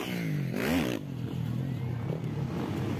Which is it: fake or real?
real